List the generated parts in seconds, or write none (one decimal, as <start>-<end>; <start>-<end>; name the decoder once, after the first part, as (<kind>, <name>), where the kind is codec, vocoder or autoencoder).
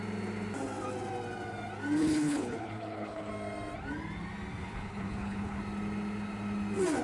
2.0-3.3 (codec, HILCodec); 4.6-5.6